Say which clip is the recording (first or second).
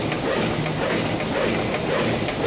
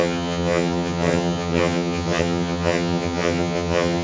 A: first